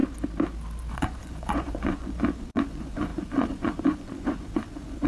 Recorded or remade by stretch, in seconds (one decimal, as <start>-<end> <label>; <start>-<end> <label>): 0.0-0.9 recorded; 0.9-5.1 remade